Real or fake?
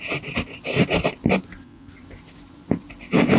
real